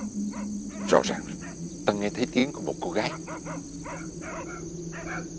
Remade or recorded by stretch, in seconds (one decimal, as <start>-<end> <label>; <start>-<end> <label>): 0.0-0.9 recorded; 0.9-1.7 remade; 1.7-5.4 recorded